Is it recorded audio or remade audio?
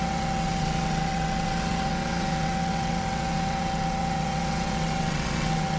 remade